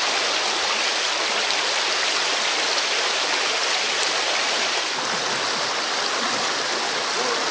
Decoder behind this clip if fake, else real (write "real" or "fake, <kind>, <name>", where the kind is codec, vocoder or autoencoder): real